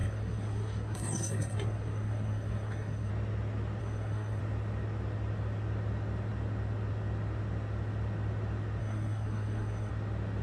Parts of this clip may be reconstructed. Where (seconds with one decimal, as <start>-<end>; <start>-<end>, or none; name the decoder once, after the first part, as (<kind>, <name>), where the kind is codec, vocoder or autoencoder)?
0.0-3.1 (codec, SNAC); 3.8-4.4; 8.8-9.9